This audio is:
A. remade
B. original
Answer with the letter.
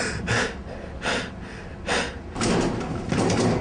B